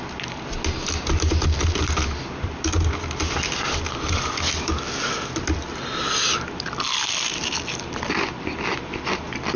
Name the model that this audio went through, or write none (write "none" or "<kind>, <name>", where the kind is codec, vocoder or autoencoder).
none